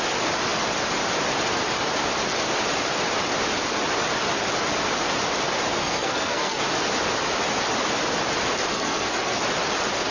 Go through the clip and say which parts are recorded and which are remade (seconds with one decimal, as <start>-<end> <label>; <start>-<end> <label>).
0.0-5.8 recorded; 5.8-6.6 remade; 6.6-8.7 recorded; 8.7-9.4 remade; 9.4-10.1 recorded